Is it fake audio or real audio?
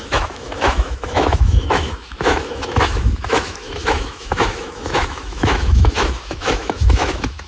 fake